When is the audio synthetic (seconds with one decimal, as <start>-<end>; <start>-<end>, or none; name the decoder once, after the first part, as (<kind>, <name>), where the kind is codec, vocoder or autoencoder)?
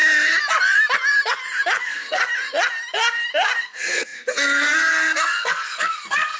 1.8-2.2 (codec, SNAC); 3.6-6.4